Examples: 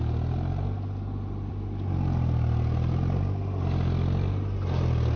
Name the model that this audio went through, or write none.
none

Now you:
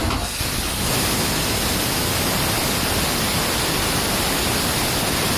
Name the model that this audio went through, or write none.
none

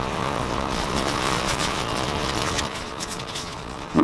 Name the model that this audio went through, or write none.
vocoder, Vocos